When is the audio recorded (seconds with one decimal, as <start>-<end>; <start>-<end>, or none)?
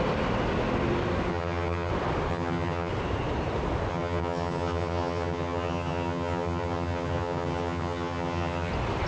0.0-1.3; 1.9-2.3; 2.9-3.9; 8.7-9.1